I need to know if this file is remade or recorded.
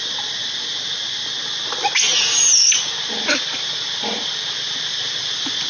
recorded